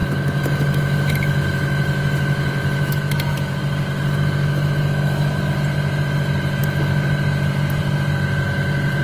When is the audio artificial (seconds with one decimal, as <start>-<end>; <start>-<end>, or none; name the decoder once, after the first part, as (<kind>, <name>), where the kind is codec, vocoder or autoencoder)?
0.0-3.6 (autoencoder, DAC-VAE); 4.4-5.4

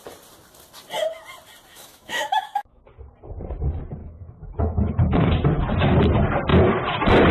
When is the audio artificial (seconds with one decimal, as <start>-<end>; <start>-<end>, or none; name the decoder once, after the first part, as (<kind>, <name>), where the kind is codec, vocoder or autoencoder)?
1.7-2.8 (autoencoder, DAC-VAE); 4.0-5.3